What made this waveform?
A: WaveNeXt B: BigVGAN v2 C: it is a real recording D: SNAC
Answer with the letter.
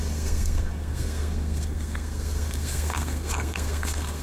D